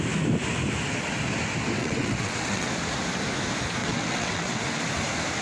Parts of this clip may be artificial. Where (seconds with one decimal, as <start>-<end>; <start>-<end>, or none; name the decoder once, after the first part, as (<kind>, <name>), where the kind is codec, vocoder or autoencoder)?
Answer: 1.8-2.7 (vocoder, WaveNeXt); 3.8-4.6